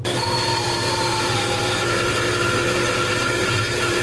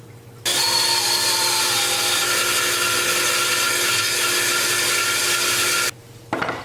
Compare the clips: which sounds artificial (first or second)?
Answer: first